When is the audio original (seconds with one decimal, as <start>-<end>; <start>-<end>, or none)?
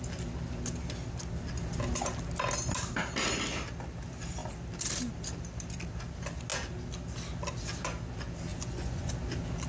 0.0-8.5; 9.1-9.7